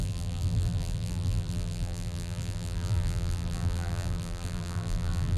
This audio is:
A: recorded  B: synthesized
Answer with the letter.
B